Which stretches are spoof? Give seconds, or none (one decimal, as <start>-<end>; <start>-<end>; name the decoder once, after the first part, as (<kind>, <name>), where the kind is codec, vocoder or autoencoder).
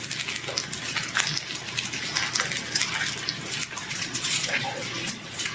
3.8-5.5 (vocoder, Vocos)